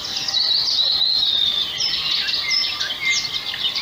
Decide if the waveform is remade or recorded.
recorded